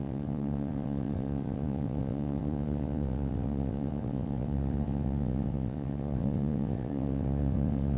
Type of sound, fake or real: fake